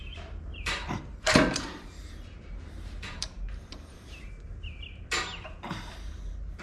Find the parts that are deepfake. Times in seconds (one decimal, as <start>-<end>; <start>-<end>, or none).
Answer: 0.5-4.3